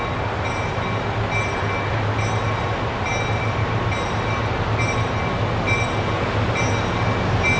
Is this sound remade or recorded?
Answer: recorded